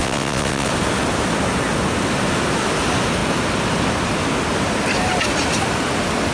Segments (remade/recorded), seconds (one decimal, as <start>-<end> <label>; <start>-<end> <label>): 0.0-0.7 remade; 0.7-6.3 recorded